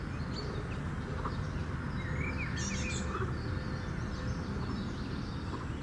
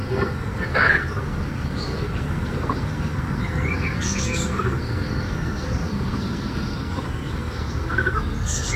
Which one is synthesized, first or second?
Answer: second